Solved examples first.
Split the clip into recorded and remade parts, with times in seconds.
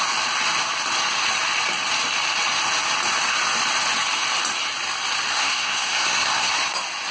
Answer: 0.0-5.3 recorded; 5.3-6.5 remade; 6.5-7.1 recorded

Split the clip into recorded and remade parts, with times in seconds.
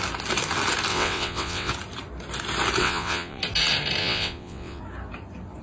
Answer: 0.0-0.9 recorded; 0.9-1.7 remade; 1.7-2.8 recorded; 2.8-3.4 remade; 3.4-4.0 recorded; 4.0-4.8 remade; 4.8-5.6 recorded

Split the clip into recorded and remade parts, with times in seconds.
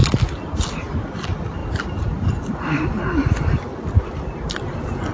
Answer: 0.0-5.1 recorded